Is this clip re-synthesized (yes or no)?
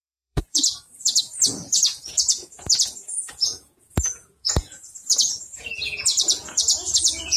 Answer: yes